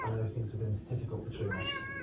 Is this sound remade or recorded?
recorded